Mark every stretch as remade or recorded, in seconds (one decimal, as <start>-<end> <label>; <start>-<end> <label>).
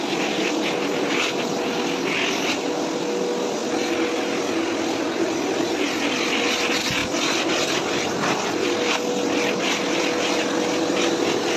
0.0-11.6 recorded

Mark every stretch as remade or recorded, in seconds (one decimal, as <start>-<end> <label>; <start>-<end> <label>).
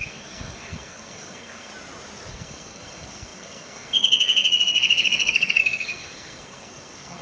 0.0-1.7 remade; 1.7-2.3 recorded; 2.3-7.2 remade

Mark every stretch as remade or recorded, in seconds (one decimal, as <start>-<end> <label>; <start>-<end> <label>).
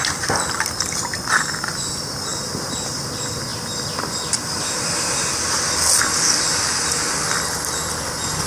0.0-8.5 recorded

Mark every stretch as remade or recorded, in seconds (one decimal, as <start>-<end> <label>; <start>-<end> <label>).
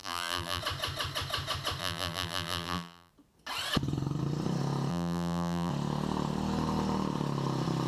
0.0-0.6 remade; 0.6-1.8 recorded; 1.8-3.1 remade; 3.1-4.9 recorded; 4.9-5.7 remade; 5.7-7.9 recorded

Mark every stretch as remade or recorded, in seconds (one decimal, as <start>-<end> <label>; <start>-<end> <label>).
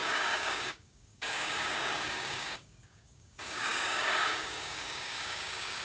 0.0-5.8 remade